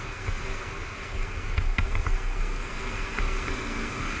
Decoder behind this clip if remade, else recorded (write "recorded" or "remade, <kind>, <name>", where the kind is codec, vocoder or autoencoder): remade, codec, SNAC